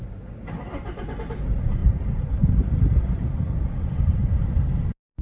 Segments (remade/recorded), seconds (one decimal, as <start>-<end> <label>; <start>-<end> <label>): 0.0-1.8 recorded; 1.8-5.2 remade